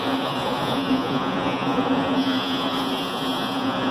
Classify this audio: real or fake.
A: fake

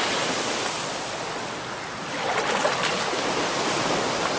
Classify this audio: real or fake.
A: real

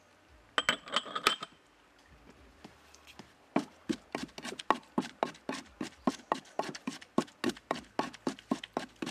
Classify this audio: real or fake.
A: real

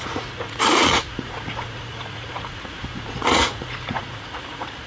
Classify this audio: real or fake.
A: fake